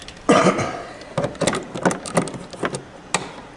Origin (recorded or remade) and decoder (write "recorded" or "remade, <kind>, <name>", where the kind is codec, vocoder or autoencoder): recorded